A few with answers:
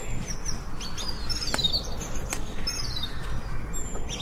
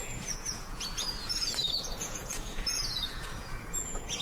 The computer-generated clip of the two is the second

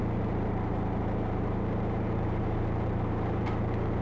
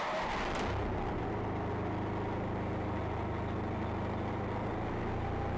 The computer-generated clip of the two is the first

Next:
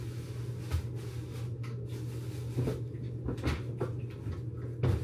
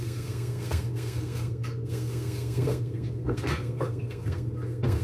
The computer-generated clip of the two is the second